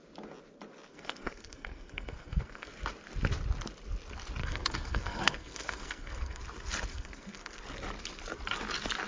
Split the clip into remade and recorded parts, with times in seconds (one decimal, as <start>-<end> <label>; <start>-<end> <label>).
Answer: 0.0-0.9 recorded; 0.9-2.7 remade; 2.7-4.4 recorded; 4.4-6.4 remade; 6.4-6.9 recorded; 6.9-7.6 remade; 7.6-9.1 recorded

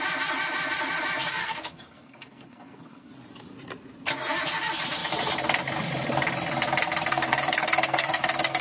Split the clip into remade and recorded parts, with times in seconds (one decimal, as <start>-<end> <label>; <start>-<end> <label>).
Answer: 0.0-1.4 recorded; 1.4-3.1 remade; 3.1-7.1 recorded; 7.1-8.6 remade

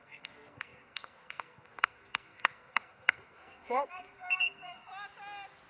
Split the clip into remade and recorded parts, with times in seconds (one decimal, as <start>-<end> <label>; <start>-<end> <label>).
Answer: 0.0-4.9 remade; 4.9-5.7 recorded

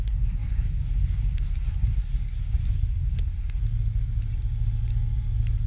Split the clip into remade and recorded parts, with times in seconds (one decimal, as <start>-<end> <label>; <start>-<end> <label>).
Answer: 0.0-3.6 remade; 3.6-5.7 recorded

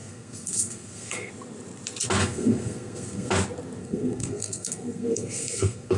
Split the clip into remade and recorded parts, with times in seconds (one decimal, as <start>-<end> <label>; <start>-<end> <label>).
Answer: 0.0-1.3 remade; 1.3-2.2 recorded; 2.2-3.3 remade; 3.3-3.8 recorded; 3.8-6.0 remade

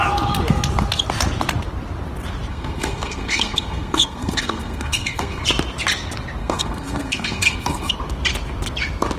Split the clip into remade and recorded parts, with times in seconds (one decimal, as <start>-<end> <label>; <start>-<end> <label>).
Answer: 0.0-2.5 recorded; 2.5-5.4 remade; 5.4-6.4 recorded; 6.4-7.9 remade; 7.9-9.2 recorded

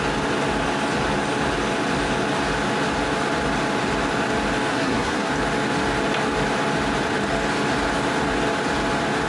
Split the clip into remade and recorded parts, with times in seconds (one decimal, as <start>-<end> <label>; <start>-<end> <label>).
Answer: 0.0-4.7 recorded; 4.7-5.3 remade; 5.3-9.3 recorded

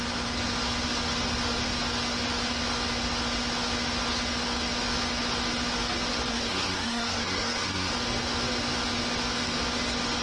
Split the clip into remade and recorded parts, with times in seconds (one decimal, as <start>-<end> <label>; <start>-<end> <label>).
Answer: 0.0-6.3 recorded; 6.3-7.9 remade; 7.9-10.2 recorded